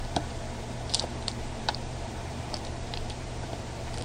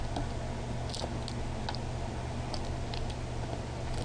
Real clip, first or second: second